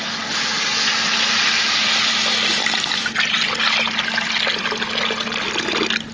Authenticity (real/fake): real